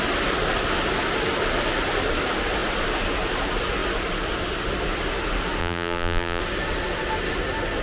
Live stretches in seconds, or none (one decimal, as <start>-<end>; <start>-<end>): 0.0-5.6; 6.4-7.8